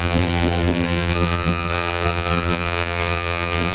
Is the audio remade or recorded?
remade